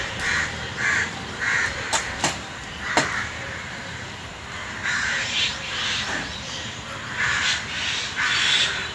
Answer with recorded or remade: remade